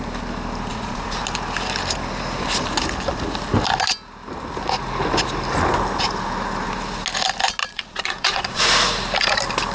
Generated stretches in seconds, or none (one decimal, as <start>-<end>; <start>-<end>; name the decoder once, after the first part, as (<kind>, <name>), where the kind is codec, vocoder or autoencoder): 0.7-1.2 (vocoder, Vocos); 7.6-8.6